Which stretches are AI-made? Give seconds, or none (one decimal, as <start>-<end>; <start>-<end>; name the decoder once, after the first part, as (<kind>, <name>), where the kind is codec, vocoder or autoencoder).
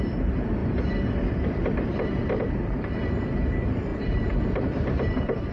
0.6-3.1 (vocoder, BigVGAN v2); 3.9-5.5